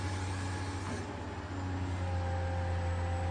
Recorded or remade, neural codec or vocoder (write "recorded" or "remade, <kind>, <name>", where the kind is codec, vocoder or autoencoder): recorded